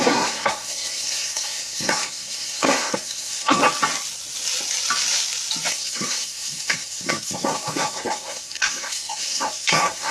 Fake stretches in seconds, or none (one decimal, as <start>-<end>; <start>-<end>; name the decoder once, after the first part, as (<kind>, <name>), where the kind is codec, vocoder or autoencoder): 0.0-3.6 (codec, SNAC); 5.7-10.1